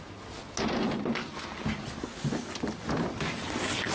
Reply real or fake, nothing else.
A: real